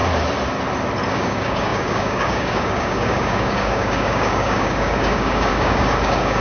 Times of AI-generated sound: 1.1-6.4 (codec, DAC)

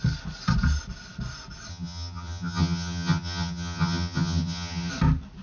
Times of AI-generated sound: 1.7-4.9 (vocoder, HiFi-GAN)

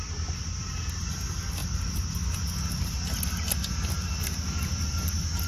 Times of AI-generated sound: none

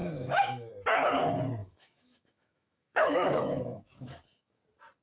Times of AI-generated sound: 0.0-0.7 (autoencoder, DAC-VAE); 1.6-4.6

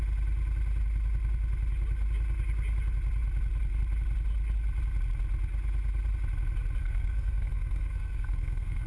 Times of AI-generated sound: 6.8-8.9 (codec, SNAC)